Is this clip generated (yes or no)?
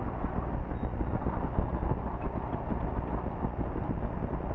no